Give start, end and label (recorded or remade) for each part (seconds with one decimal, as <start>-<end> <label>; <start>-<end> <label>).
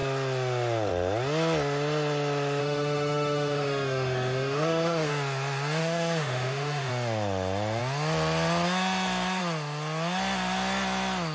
0.0-2.6 recorded; 2.6-5.1 remade; 5.1-5.8 recorded; 5.8-6.9 remade; 6.9-11.3 recorded